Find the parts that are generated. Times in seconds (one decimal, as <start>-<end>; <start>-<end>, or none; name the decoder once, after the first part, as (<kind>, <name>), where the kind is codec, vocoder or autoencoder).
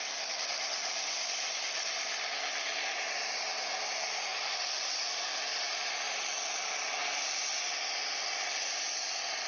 none